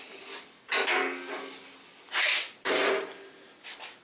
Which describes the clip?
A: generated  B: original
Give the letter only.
B